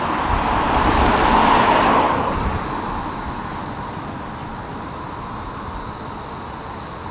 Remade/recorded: recorded